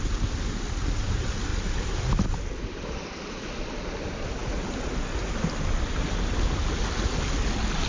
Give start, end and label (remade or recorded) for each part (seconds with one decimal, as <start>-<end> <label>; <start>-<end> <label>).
0.0-7.9 recorded